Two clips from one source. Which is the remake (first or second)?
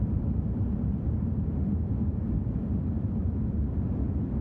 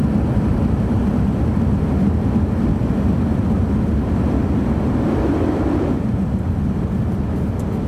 first